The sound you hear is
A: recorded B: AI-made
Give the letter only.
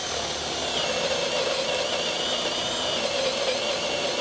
A